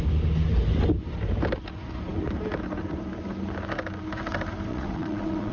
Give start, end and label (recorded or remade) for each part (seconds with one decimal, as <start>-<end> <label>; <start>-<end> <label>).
0.0-4.7 recorded; 4.7-5.5 remade